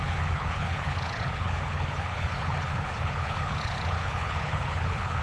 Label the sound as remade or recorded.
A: remade